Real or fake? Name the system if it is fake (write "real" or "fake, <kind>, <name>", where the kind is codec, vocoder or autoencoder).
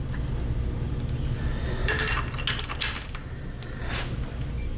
real